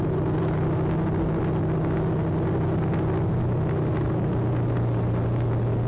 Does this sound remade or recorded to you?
recorded